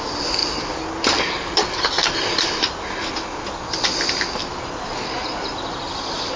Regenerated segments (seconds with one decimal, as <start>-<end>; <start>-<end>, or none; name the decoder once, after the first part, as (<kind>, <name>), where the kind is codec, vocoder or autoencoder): none